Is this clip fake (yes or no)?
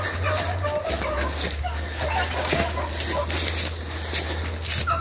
no